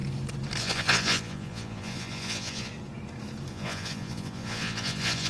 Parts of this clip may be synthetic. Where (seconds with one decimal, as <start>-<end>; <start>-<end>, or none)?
0.6-2.7; 3.5-5.3